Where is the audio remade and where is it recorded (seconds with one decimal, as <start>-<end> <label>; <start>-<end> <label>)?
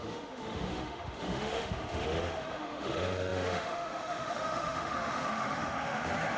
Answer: 0.0-6.4 remade